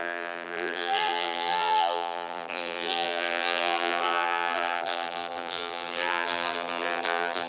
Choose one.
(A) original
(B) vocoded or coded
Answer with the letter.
B